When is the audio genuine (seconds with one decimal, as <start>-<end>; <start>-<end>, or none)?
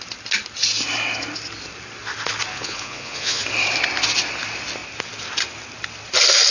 0.0-2.5; 3.4-6.5